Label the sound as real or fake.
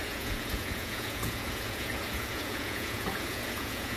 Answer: fake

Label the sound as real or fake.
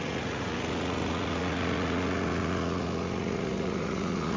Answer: fake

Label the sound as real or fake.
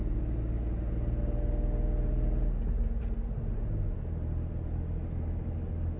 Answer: real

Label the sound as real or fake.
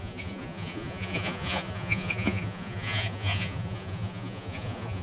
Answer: fake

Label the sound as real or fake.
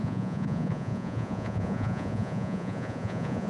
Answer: fake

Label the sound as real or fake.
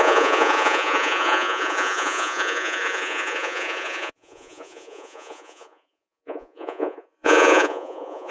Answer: fake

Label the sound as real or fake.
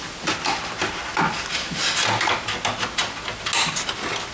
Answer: real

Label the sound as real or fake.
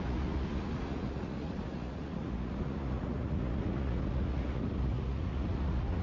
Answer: fake